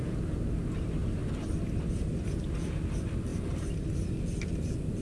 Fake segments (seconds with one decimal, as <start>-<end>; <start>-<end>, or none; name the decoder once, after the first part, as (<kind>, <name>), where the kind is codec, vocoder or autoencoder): none